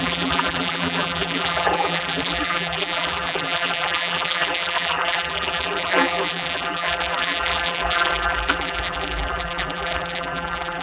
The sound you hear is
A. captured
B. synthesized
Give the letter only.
B